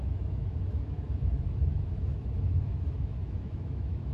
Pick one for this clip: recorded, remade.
remade